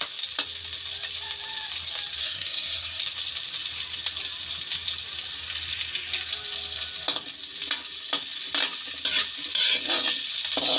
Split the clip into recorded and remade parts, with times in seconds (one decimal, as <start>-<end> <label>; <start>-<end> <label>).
0.0-2.2 recorded; 2.2-3.0 remade; 3.0-10.8 recorded